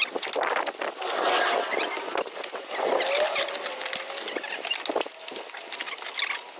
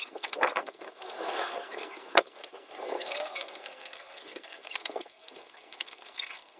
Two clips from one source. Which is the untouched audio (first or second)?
first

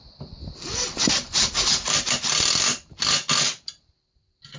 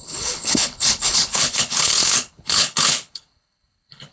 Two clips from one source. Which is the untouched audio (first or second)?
first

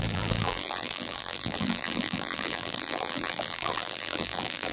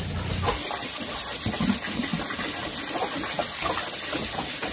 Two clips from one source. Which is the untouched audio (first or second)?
second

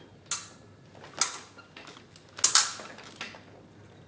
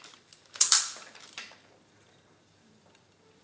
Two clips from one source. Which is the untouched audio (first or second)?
first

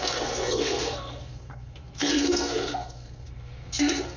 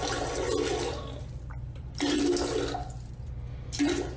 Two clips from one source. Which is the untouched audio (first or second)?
second